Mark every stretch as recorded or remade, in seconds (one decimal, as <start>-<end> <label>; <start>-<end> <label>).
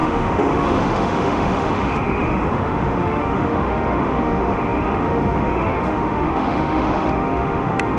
0.0-8.0 remade